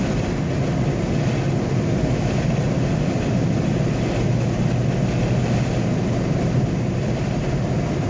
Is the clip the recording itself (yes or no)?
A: yes